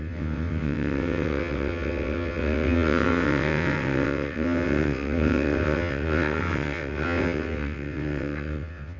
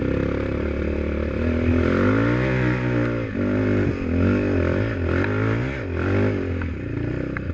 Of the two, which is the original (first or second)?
second